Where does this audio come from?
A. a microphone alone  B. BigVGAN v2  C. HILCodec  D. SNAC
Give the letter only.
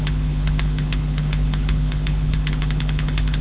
C